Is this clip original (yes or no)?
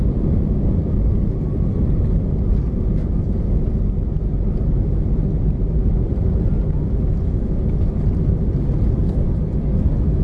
yes